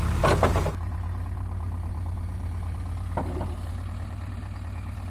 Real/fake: real